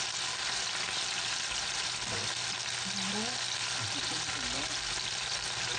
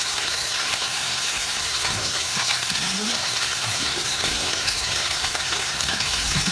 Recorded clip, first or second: first